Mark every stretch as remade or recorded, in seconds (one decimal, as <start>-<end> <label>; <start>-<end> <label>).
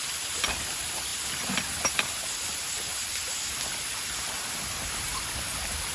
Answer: 0.0-5.9 recorded